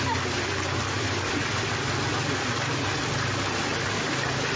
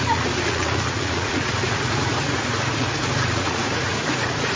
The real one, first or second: first